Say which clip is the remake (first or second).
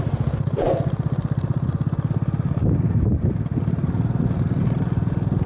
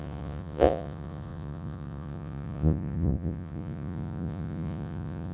second